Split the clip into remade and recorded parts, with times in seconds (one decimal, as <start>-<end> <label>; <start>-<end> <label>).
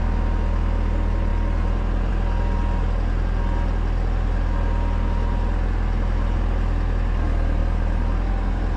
0.0-8.8 recorded